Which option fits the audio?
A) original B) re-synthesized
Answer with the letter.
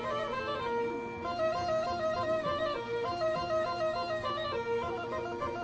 A